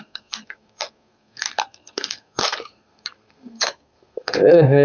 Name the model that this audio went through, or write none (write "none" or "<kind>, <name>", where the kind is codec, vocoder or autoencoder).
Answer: codec, SNAC